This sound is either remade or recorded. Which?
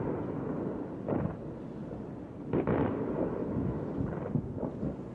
recorded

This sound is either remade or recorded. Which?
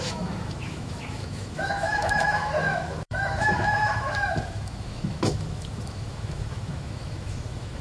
remade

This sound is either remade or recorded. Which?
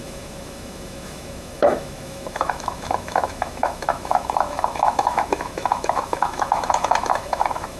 remade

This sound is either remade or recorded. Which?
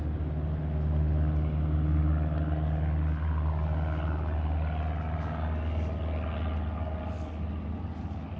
recorded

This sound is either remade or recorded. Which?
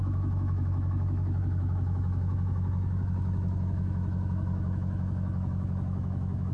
remade